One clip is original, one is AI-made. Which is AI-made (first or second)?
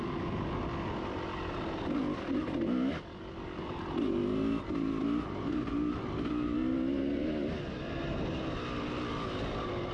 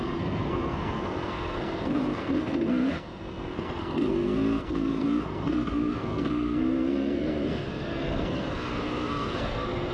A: second